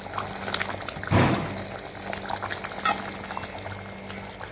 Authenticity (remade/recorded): recorded